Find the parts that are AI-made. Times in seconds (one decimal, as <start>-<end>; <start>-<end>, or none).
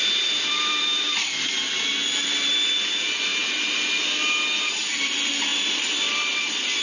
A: 0.0-3.3; 4.7-6.8